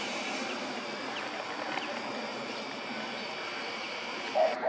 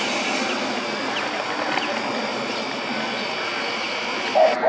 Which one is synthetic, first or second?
first